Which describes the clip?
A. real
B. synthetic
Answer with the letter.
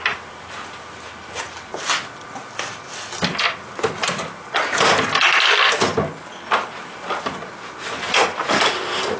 A